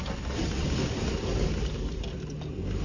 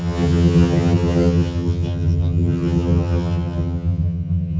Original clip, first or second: first